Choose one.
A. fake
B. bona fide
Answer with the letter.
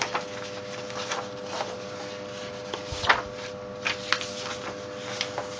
B